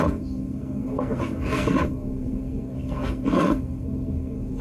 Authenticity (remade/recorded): remade